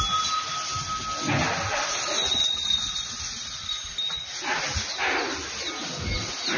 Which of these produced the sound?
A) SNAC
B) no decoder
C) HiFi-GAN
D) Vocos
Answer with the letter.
B